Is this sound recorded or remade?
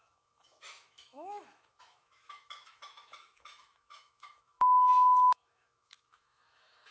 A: remade